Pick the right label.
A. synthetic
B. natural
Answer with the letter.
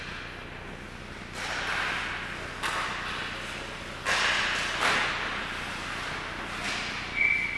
B